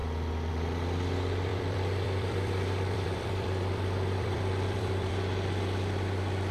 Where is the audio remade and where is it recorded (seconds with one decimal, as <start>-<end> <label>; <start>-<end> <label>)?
0.0-0.5 remade; 0.5-1.5 recorded; 1.5-5.1 remade; 5.1-6.5 recorded